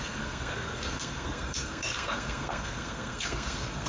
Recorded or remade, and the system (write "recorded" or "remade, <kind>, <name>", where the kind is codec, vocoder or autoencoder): remade, codec, SNAC